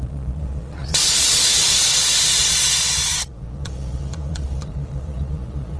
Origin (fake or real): fake